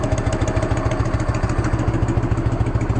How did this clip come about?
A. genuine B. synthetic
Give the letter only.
A